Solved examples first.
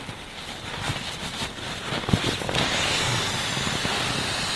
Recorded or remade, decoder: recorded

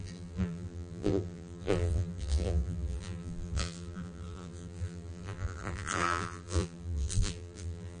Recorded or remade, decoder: remade, vocoder, BigVGAN v2